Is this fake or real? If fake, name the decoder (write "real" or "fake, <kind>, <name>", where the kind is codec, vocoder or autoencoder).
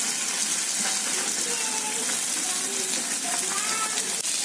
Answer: real